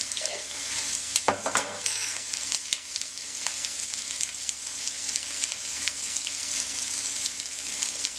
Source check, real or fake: fake